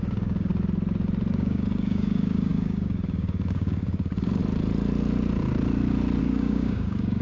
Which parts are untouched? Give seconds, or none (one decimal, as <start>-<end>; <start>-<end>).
0.5-1.3; 4.4-6.2